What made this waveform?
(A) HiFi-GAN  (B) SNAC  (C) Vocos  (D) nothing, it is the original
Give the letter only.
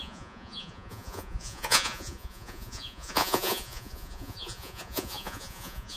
C